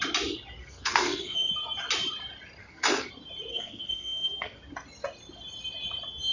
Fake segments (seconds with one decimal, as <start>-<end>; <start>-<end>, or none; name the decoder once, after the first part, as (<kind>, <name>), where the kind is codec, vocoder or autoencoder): 0.6-1.5 (codec, SNAC); 2.6-3.1; 3.5-4.6